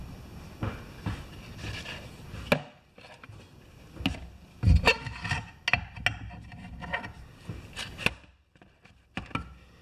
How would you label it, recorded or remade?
recorded